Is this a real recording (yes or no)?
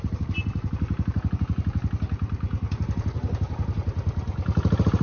yes